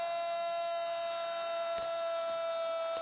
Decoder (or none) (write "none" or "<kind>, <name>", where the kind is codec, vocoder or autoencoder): none